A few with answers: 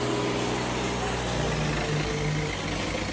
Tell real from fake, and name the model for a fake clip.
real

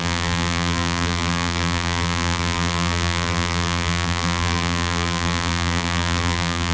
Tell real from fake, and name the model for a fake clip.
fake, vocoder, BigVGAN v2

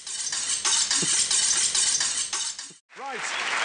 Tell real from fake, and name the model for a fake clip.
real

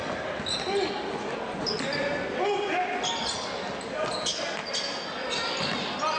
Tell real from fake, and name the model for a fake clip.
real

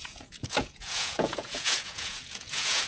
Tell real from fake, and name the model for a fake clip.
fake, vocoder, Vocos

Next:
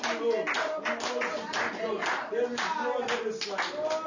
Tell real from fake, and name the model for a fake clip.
real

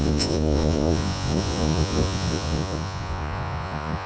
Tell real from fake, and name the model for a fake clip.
fake, vocoder, Vocos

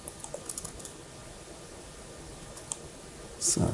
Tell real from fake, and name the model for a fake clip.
real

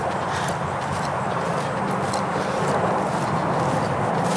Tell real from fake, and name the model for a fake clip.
real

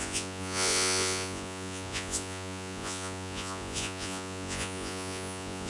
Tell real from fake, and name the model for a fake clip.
fake, vocoder, Vocos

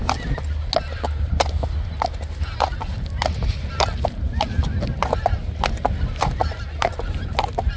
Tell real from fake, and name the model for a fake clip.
real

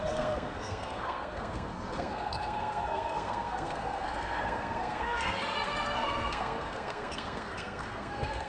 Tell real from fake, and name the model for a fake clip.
fake, codec, SNAC